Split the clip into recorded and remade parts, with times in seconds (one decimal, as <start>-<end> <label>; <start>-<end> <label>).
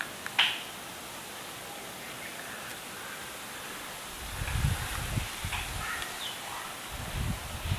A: 0.0-7.8 recorded